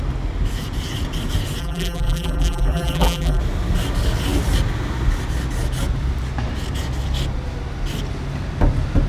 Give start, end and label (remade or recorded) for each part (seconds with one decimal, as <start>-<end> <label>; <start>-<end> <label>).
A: 0.0-1.6 recorded; 1.6-3.4 remade; 3.4-9.1 recorded